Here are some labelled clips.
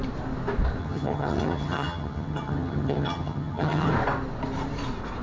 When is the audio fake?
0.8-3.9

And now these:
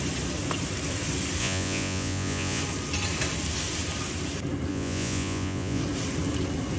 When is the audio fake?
1.4-2.6; 4.7-5.8